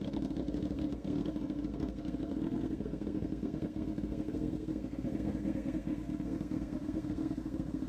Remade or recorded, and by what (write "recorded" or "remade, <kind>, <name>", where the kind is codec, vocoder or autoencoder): remade, codec, SNAC